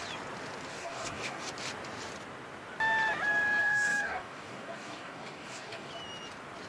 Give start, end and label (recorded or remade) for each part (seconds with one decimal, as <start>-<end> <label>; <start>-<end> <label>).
0.0-0.7 recorded; 0.7-1.5 remade; 1.5-3.6 recorded; 3.6-5.9 remade; 5.9-6.7 recorded